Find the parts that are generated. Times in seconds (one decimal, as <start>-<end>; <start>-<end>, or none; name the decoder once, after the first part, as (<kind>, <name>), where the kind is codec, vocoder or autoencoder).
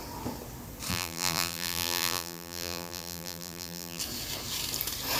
0.9-4.0 (vocoder, BigVGAN v2)